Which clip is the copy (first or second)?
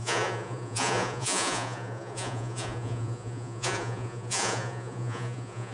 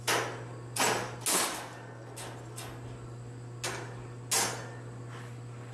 first